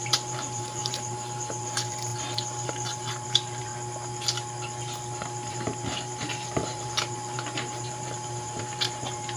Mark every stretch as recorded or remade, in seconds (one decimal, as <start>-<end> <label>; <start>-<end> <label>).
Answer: 0.0-3.7 remade; 3.7-5.5 recorded; 5.5-9.4 remade